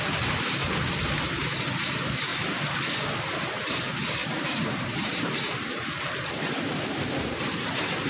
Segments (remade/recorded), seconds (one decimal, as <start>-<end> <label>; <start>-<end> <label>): 0.0-2.3 remade; 2.3-3.2 recorded; 3.2-8.1 remade